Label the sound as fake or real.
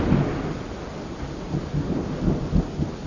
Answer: real